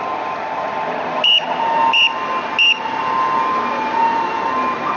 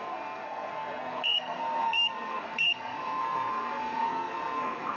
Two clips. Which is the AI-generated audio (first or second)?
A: second